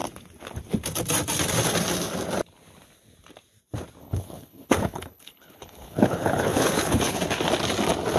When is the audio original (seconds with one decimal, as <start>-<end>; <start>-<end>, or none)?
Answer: 0.0-4.0; 7.2-8.2